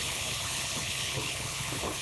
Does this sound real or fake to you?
fake